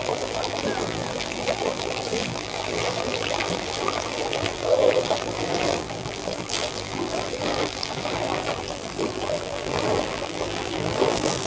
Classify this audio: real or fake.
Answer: fake